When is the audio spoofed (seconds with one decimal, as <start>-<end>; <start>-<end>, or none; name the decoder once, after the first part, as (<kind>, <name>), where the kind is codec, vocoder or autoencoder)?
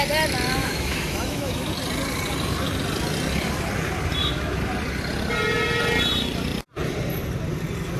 0.6-1.7 (autoencoder, DAC-VAE); 4.2-4.7